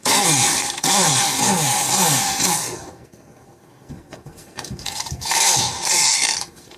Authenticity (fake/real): fake